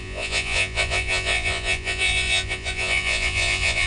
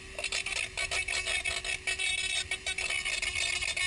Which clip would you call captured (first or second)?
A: second